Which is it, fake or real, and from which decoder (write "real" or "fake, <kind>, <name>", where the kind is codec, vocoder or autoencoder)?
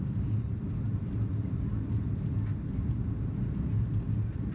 real